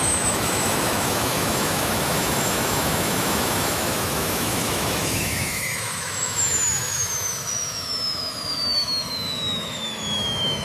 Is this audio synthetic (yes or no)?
yes